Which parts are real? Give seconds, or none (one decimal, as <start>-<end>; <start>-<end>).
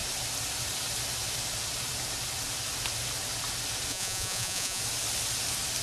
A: 0.0-3.9; 4.8-5.8